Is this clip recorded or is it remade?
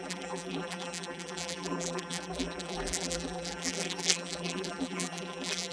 remade